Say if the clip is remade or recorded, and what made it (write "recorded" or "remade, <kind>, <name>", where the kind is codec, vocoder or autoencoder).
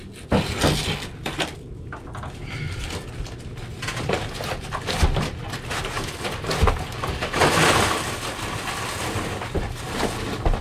recorded